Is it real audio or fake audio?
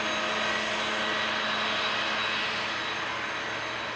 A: real